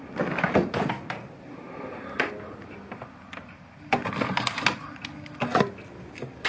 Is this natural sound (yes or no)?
yes